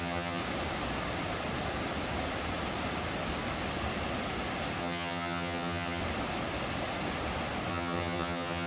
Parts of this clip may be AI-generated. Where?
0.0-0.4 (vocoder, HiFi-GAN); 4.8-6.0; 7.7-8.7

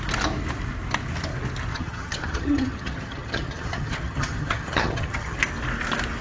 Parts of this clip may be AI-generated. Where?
1.7-5.4 (vocoder, HiFi-GAN)

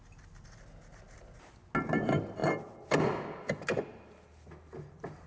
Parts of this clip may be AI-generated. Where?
none

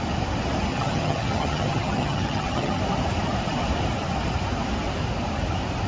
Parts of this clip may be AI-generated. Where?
0.7-2.8 (vocoder, HiFi-GAN)

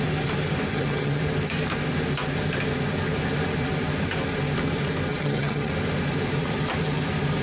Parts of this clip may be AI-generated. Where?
0.7-1.2 (vocoder, HiFi-GAN); 5.1-5.7

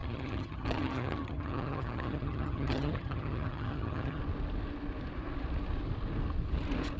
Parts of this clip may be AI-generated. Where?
0.0-4.2 (vocoder, HiFi-GAN)

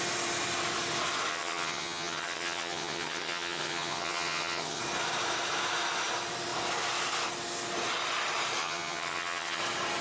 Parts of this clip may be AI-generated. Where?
1.3-4.8 (vocoder, HiFi-GAN); 8.6-9.6

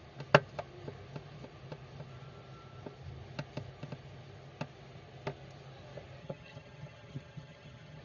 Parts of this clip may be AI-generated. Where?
6.2-8.0 (vocoder, HiFi-GAN)